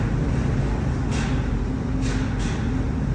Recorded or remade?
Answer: recorded